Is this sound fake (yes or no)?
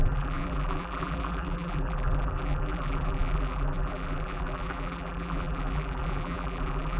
yes